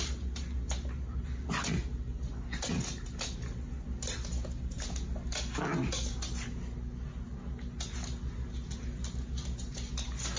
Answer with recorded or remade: recorded